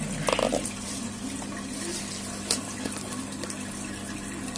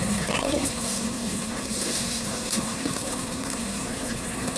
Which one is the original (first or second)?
first